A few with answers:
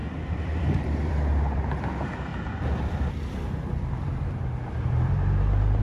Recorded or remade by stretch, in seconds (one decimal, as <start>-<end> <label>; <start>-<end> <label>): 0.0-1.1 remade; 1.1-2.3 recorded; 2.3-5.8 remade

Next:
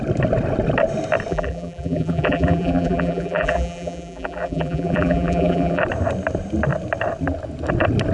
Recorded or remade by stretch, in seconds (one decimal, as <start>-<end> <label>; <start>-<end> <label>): 0.0-1.3 recorded; 1.3-5.8 remade; 5.8-8.1 recorded

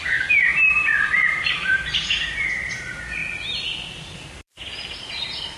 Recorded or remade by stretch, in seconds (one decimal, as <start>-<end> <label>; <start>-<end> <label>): 0.0-3.2 remade; 3.2-4.1 recorded; 4.1-5.6 remade

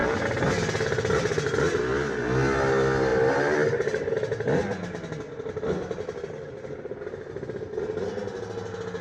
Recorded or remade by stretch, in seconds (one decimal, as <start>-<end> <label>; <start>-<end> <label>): 0.0-0.5 remade; 0.5-9.0 recorded

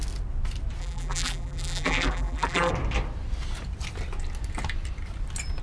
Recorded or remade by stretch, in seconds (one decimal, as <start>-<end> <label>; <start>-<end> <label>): 0.0-0.8 recorded; 0.8-2.7 remade; 2.7-5.6 recorded

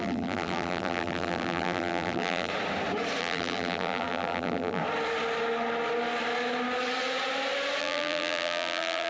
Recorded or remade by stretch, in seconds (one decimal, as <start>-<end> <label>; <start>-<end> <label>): 0.0-2.5 remade; 2.5-3.2 recorded; 3.2-4.8 remade; 4.8-7.8 recorded; 7.8-9.1 remade